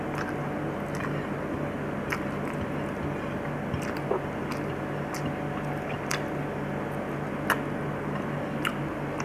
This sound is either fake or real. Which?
real